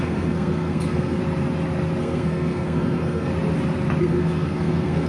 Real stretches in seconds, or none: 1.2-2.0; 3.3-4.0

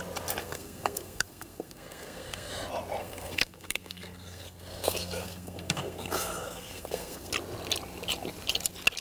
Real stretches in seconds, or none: 0.0-0.4; 2.5-3.0; 7.3-9.0

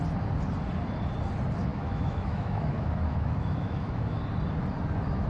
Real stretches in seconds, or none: 0.0-1.7; 4.2-5.3